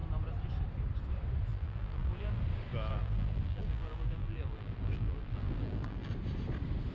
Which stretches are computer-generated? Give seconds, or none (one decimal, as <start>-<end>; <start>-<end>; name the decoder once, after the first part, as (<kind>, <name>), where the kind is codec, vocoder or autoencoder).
1.5-2.4 (vocoder, BigVGAN v2); 2.9-6.1